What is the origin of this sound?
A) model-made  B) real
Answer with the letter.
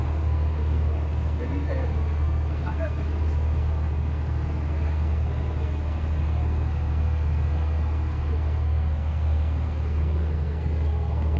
A